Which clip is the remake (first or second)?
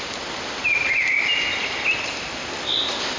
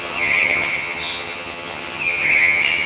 second